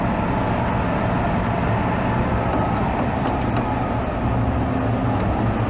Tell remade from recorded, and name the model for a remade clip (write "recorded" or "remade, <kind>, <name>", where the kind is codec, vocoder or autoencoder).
recorded